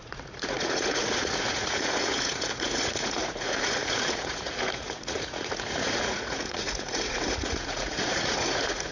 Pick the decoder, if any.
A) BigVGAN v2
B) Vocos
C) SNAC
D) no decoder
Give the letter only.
B